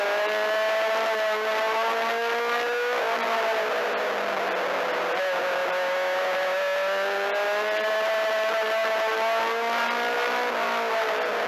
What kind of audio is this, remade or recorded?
recorded